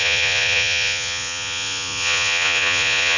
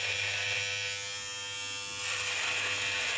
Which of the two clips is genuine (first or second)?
second